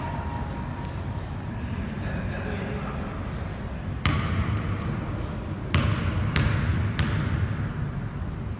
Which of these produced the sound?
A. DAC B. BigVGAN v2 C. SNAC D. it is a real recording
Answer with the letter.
D